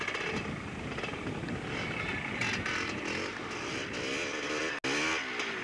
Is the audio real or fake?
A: real